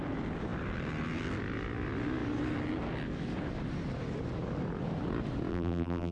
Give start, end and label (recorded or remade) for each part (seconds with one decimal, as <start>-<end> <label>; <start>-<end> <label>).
0.0-5.5 recorded; 5.5-6.1 remade